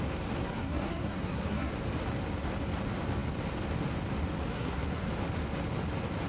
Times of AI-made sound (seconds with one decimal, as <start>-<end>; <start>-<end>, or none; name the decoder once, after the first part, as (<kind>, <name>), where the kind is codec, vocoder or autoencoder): 0.4-1.7 (codec, SNAC); 4.5-5.1